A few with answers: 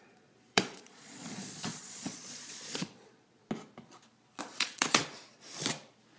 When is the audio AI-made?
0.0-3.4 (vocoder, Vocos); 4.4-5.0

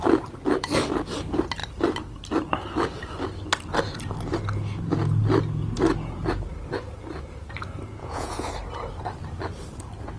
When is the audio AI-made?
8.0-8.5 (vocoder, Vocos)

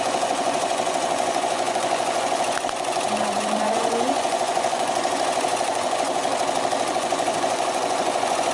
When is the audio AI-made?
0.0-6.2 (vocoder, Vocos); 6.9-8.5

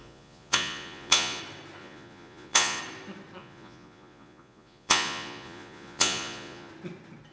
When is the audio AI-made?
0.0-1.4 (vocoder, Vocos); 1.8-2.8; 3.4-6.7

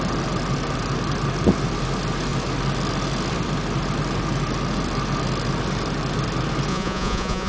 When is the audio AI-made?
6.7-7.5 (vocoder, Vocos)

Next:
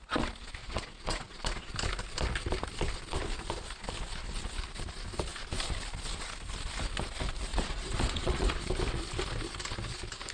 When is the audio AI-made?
0.6-1.7 (vocoder, Vocos); 7.5-8.6

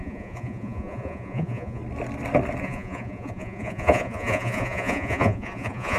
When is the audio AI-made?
0.0-1.8 (vocoder, Vocos); 2.6-6.0

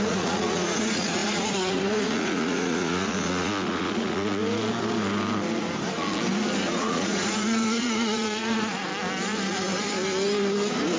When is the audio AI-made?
0.0-4.4 (vocoder, Vocos); 6.7-8.9